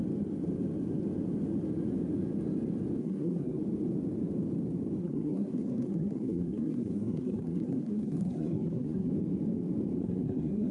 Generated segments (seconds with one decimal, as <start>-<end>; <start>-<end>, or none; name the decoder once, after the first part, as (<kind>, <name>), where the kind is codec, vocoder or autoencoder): 3.0-3.6 (codec, SNAC); 5.0-9.1; 9.9-10.7